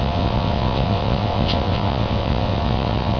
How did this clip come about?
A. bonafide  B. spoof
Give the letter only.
B